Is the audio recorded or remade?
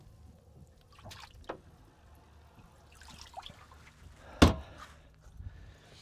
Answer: recorded